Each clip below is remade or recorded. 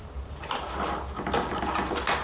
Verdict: recorded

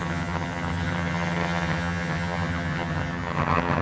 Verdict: remade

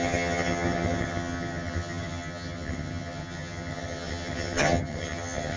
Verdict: remade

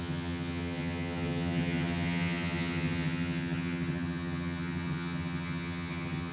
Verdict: remade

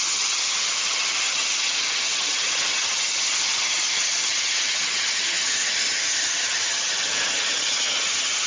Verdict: remade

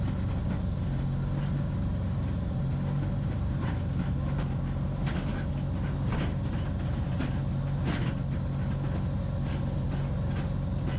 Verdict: recorded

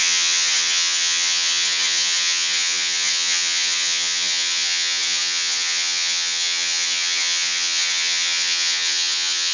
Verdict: remade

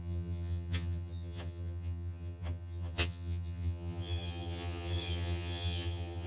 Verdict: remade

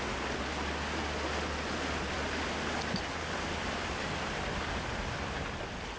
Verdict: recorded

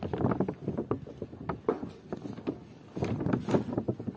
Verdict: recorded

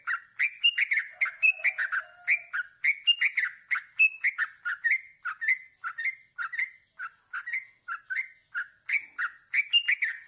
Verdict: recorded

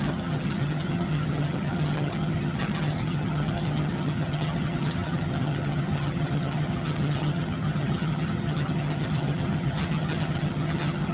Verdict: remade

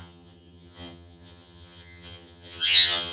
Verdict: remade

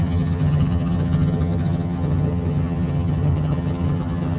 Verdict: remade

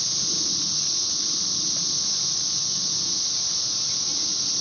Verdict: recorded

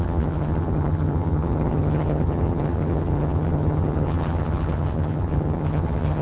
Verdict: remade